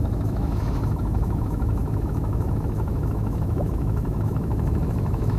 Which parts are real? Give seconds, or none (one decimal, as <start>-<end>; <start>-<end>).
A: none